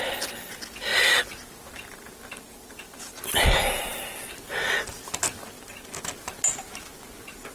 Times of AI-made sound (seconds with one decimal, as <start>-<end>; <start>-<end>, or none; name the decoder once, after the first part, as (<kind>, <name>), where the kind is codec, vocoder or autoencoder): none